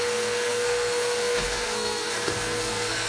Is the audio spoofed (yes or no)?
yes